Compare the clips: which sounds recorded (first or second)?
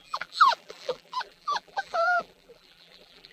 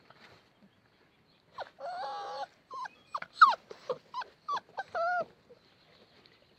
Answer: second